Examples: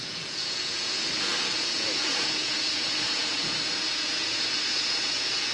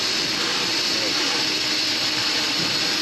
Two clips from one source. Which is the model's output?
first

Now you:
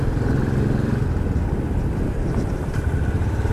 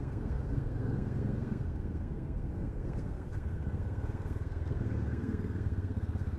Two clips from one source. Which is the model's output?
second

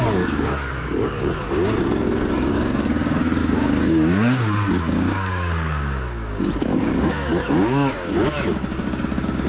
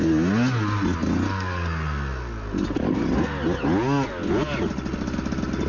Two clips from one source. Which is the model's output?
first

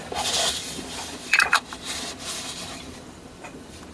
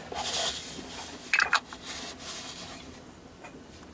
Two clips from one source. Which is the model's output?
first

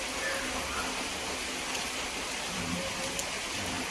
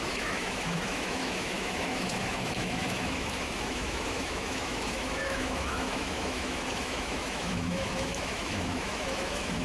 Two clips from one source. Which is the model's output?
second